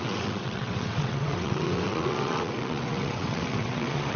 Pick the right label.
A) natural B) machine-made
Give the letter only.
B